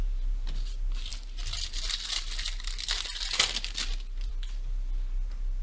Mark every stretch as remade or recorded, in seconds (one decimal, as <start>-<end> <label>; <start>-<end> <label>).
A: 0.0-5.6 recorded